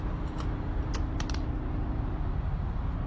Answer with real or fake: real